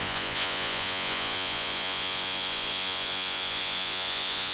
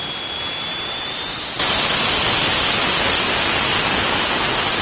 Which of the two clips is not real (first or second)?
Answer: first